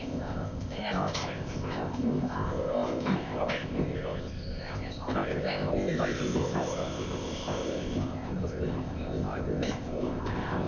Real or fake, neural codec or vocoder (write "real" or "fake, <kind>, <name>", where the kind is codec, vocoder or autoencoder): fake, codec, ZipCodec